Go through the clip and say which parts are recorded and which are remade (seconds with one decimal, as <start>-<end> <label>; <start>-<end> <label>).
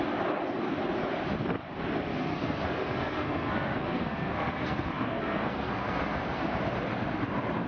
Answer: 0.0-2.1 recorded; 2.1-6.6 remade; 6.6-7.7 recorded